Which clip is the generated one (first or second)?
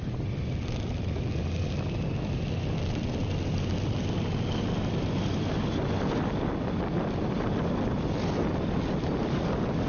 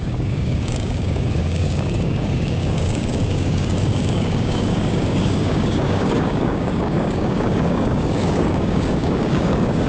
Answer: second